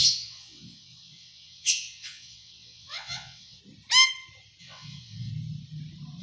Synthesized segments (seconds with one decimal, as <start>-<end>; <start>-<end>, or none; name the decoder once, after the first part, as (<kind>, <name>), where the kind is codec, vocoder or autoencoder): 0.0-3.6 (vocoder, WaveNeXt); 4.6-5.3